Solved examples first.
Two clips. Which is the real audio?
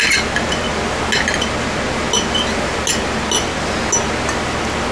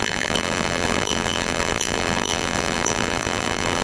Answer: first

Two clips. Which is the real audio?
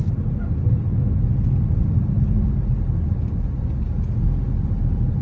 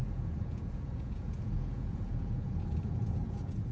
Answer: first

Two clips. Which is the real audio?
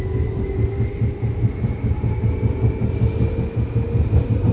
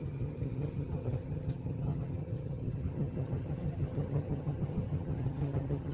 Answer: first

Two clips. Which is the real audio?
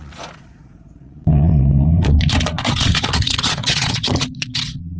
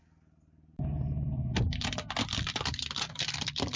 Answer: second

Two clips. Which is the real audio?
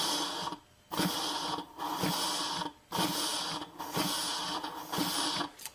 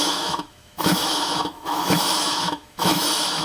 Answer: first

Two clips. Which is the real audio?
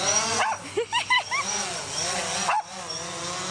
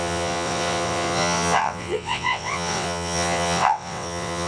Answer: first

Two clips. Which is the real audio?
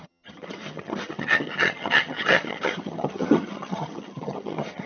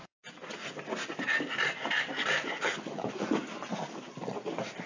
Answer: second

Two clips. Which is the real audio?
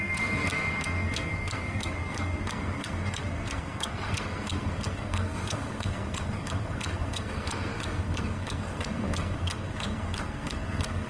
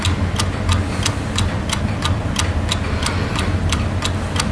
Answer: second